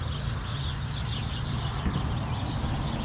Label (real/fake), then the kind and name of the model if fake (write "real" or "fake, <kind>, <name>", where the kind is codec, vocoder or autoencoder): real